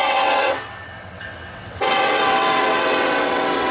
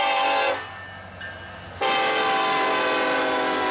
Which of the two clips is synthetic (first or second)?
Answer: first